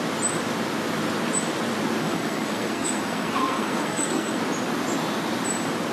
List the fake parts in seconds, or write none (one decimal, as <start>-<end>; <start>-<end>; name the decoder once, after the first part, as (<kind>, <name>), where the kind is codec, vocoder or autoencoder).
2.0-4.4 (codec, SNAC)